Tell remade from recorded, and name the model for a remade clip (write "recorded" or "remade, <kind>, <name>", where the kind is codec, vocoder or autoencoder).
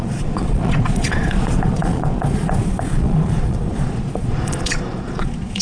remade, vocoder, Vocos